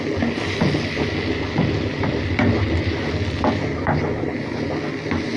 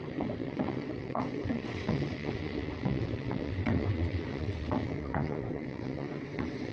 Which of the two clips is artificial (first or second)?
second